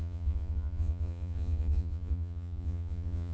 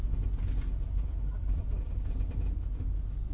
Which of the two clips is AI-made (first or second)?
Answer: first